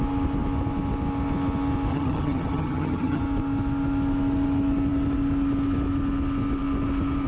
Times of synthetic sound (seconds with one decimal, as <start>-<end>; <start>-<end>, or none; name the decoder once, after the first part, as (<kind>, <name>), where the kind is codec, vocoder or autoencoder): 1.9-3.2 (vocoder, HiFi-GAN)